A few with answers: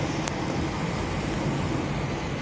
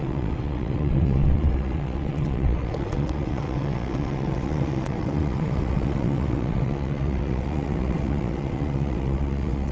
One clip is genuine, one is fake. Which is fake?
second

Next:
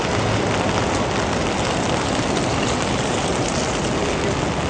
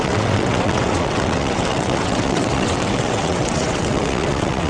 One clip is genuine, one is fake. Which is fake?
second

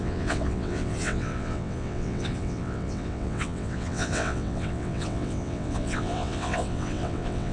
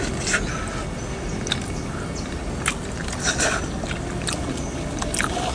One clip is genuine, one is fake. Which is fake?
first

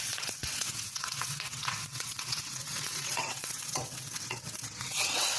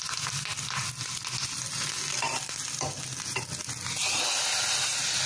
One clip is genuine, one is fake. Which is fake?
first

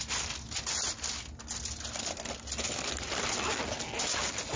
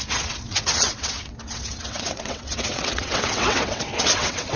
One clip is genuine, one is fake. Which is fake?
second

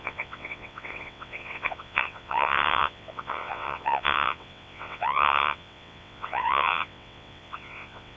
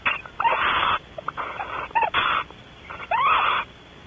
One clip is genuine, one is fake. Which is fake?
first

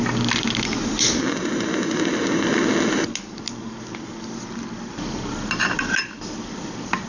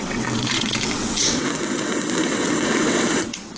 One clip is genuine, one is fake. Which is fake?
second